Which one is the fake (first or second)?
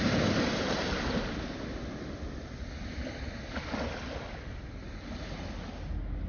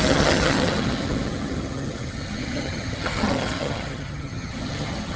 second